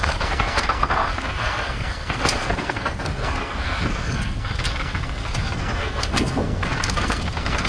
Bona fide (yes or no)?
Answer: no